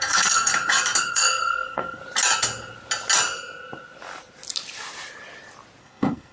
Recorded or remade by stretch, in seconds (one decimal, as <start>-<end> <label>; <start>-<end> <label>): 0.0-0.5 remade; 0.5-1.1 recorded; 1.1-2.0 remade; 2.0-5.8 recorded; 5.8-6.3 remade